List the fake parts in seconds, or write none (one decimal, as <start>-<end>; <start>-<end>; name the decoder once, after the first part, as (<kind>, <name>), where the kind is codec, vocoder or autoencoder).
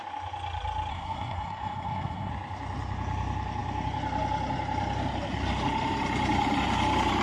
0.9-2.3 (codec, SNAC)